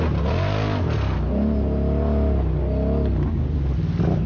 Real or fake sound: real